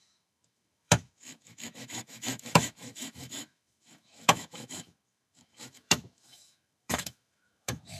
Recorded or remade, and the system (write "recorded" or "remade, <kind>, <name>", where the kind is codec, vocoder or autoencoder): remade, autoencoder, DAC-VAE